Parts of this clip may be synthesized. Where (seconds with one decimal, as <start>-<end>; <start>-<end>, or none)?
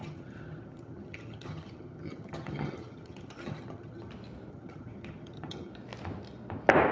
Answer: 0.0-4.1; 4.5-5.7